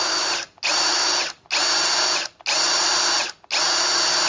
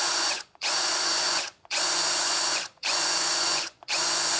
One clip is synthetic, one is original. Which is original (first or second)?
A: first